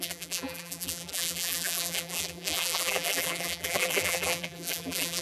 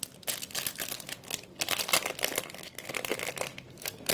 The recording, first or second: second